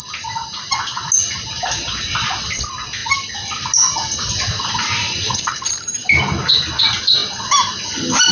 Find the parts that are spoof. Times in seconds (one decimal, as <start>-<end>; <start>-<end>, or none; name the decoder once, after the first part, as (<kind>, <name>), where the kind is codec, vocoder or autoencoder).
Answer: none